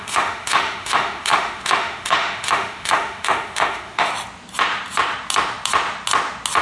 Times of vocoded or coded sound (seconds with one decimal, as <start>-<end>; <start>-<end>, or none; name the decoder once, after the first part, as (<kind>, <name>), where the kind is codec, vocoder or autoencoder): 0.0-4.1 (autoencoder, DAC-VAE)

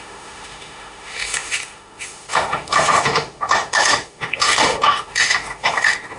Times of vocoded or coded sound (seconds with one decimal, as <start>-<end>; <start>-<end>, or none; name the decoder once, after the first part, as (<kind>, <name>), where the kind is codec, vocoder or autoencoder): 0.0-6.2 (autoencoder, DAC-VAE)

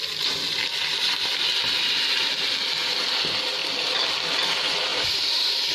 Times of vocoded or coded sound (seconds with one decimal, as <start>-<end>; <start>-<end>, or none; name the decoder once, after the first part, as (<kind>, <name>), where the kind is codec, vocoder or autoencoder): none

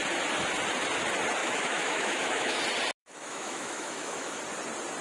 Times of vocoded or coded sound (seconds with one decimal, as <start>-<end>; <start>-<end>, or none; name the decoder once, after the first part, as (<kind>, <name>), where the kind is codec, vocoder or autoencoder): 1.4-2.6 (autoencoder, DAC-VAE); 3.0-4.4

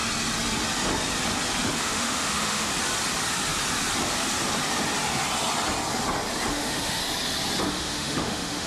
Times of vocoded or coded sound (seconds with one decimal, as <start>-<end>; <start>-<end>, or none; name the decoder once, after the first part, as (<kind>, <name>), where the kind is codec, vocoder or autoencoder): 1.8-2.7 (autoencoder, DAC-VAE); 6.5-7.0; 7.7-8.7